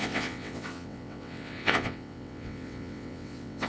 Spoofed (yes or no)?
yes